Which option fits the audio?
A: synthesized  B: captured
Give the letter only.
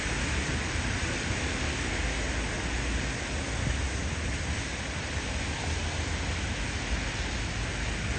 B